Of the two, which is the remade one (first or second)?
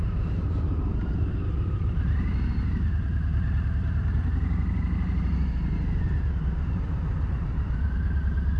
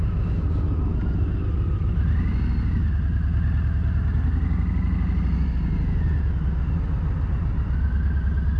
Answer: first